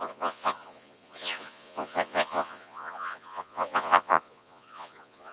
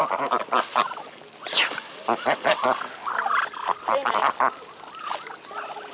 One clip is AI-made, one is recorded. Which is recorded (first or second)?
second